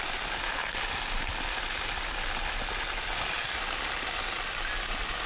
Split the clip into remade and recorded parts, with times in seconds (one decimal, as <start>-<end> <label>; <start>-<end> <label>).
0.0-5.3 recorded